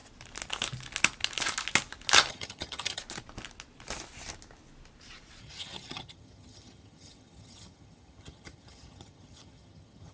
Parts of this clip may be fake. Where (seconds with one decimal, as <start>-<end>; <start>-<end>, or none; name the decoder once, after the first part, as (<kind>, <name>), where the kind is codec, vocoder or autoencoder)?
2.3-3.0 (vocoder, HiFi-GAN); 5.4-10.1